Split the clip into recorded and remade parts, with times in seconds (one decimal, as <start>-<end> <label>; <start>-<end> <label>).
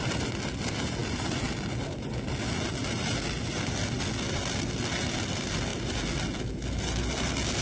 0.0-7.6 recorded